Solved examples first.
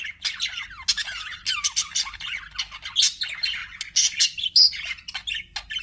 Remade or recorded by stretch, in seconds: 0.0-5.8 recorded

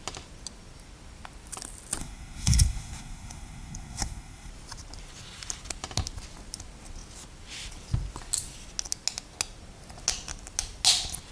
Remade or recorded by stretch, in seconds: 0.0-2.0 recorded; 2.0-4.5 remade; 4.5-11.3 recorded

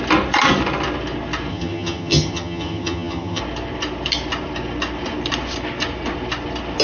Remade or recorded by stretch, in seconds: 0.0-1.5 recorded; 1.5-3.4 remade; 3.4-6.8 recorded

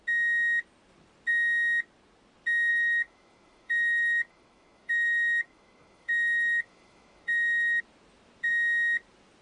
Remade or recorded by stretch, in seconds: 0.0-2.7 recorded; 2.7-7.8 remade; 7.8-9.4 recorded